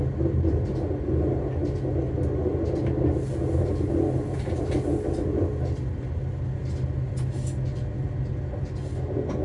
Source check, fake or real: real